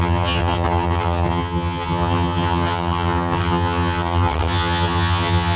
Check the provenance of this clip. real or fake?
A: fake